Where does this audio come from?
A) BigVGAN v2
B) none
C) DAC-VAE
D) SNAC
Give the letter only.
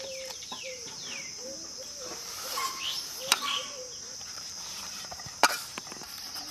A